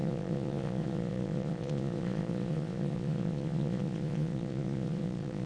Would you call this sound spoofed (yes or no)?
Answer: yes